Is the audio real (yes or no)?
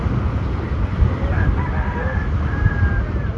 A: yes